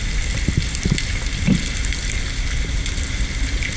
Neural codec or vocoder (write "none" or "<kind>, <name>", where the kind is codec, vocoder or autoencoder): none